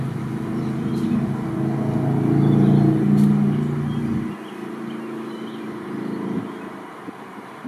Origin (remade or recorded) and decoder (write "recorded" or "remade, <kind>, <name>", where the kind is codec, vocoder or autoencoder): recorded